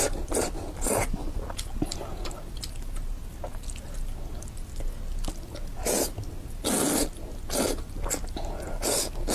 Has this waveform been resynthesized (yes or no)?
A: no